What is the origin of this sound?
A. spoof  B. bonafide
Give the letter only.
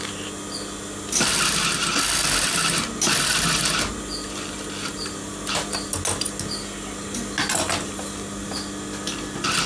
B